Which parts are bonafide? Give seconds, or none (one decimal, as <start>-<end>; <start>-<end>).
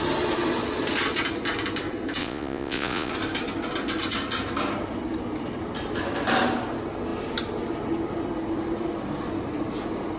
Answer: 0.0-2.2; 3.1-10.2